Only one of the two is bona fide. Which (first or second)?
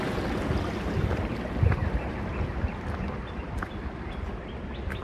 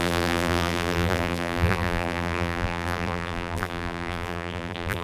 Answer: first